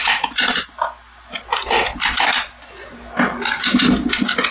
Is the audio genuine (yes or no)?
yes